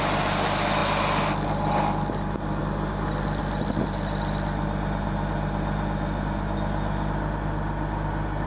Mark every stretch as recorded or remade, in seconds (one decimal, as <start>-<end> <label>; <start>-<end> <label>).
0.0-8.5 recorded